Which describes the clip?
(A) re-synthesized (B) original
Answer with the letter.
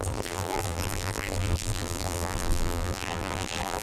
A